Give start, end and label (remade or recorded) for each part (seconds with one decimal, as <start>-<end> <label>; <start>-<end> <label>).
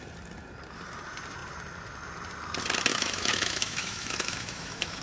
0.0-2.9 recorded; 2.9-5.0 remade